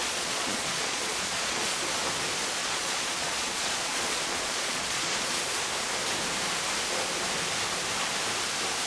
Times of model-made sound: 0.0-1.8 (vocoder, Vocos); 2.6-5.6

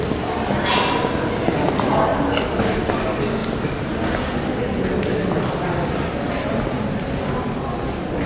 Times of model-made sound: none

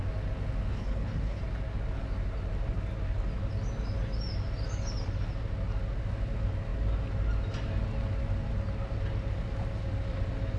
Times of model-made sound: 0.7-1.4 (codec, HILCodec)

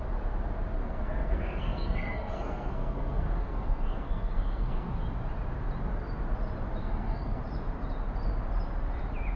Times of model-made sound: 0.8-5.0 (codec, SNAC); 6.8-7.4

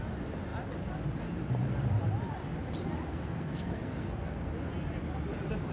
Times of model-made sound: 3.1-4.5 (codec, SNAC)